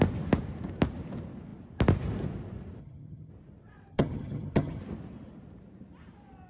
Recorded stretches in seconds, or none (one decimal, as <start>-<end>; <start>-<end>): 0.0-2.8; 3.3-3.9; 4.8-6.5